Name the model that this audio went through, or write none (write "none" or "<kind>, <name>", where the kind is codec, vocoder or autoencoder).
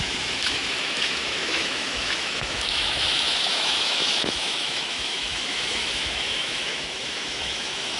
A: autoencoder, DAC-VAE